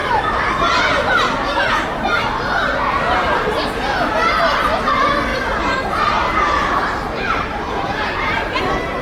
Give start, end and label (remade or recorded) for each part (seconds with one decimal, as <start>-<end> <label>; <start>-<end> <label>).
0.0-0.9 remade; 0.9-5.3 recorded; 5.3-8.6 remade; 8.6-9.0 recorded